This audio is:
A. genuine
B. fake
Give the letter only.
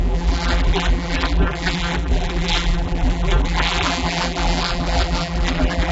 B